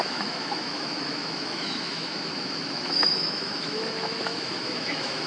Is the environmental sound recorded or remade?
remade